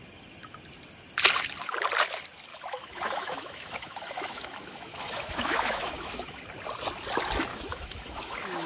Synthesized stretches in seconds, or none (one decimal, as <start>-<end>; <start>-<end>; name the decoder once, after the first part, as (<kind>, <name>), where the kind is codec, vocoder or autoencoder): 2.5-6.4 (autoencoder, DAC-VAE); 7.5-8.7